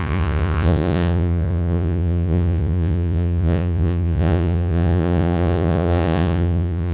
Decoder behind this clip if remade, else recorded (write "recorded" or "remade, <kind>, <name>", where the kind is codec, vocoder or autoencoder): remade, vocoder, Vocos